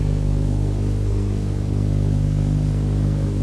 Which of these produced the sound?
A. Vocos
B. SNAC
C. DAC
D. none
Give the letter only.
B